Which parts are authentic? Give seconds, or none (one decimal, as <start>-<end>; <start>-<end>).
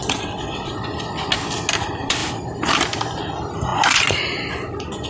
0.7-5.1